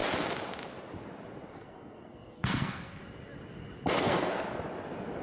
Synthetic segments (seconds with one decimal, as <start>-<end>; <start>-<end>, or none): 1.5-3.0; 4.0-4.5

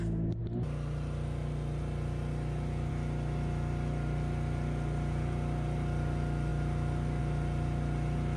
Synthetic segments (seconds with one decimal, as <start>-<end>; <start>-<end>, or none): none

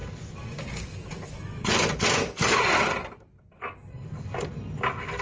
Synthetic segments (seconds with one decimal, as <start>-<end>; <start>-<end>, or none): none